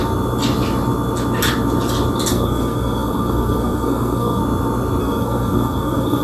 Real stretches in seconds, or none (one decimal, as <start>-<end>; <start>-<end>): 0.0-2.3; 4.4-5.0